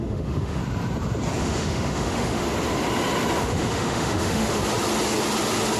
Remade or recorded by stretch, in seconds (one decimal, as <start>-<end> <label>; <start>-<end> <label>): 0.0-0.6 remade; 0.6-1.4 recorded; 1.4-2.4 remade; 2.4-3.4 recorded; 3.4-4.6 remade; 4.6-5.8 recorded